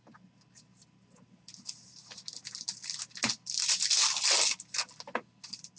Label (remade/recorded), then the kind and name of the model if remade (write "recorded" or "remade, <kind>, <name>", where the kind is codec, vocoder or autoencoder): recorded